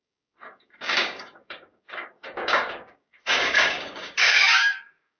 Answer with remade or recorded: remade